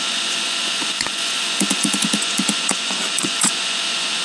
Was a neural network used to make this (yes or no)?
yes